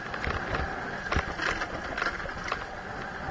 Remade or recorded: recorded